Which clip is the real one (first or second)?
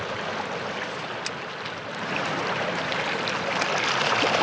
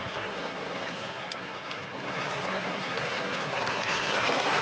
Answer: first